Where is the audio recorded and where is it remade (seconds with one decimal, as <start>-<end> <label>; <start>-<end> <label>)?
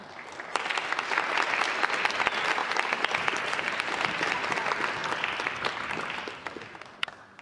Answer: 0.0-2.6 recorded; 2.6-3.8 remade; 3.8-7.4 recorded